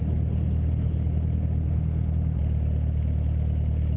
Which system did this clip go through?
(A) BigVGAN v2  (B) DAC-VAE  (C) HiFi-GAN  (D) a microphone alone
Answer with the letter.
D